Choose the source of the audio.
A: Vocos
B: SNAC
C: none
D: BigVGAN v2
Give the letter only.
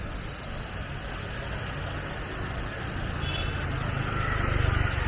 C